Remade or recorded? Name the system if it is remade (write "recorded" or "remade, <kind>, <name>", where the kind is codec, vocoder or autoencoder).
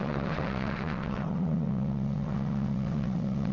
remade, vocoder, WaveNeXt